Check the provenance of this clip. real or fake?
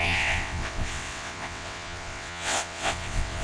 fake